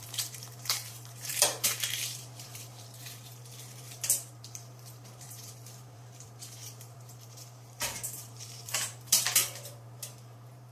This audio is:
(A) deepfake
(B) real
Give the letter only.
A